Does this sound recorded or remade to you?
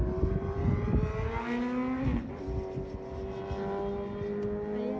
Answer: recorded